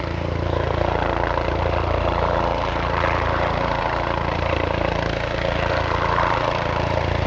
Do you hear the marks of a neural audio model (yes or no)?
yes